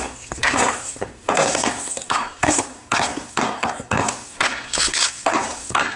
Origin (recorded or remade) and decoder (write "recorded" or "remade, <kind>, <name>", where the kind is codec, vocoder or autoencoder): remade, codec, SNAC